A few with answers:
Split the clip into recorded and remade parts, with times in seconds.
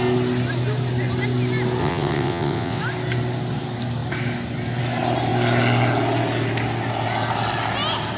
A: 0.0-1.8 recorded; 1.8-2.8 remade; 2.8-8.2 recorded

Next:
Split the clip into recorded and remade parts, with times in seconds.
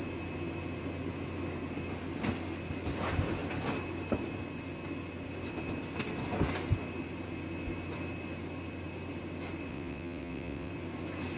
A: 0.0-9.7 recorded; 9.7-10.7 remade; 10.7-11.4 recorded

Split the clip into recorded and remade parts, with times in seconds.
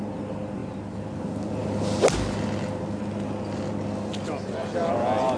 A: 0.0-5.4 recorded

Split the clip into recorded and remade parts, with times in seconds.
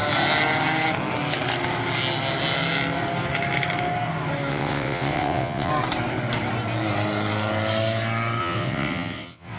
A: 0.0-4.5 recorded; 4.5-5.7 remade; 5.7-8.4 recorded; 8.4-9.6 remade